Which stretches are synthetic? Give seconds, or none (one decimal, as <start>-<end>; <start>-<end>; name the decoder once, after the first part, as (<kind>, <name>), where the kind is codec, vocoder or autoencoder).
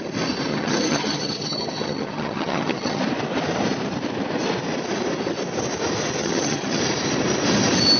0.5-3.0 (vocoder, HiFi-GAN); 6.2-6.8